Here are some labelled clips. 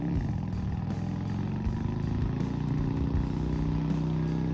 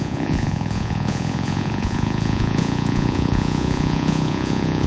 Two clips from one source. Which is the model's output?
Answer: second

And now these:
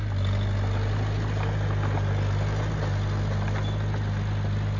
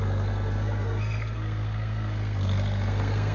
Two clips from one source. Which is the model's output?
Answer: second